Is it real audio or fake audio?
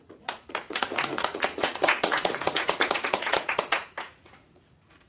fake